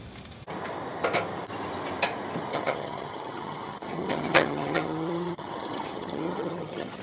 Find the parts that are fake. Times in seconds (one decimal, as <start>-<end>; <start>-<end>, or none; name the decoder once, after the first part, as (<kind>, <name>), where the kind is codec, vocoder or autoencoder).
2.5-7.0 (vocoder, HiFi-GAN)